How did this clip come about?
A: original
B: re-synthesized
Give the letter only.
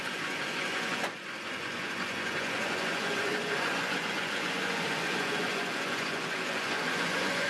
B